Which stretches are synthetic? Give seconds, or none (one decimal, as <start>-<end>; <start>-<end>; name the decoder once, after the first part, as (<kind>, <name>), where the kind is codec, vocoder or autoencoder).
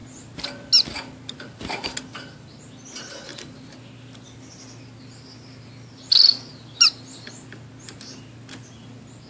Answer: none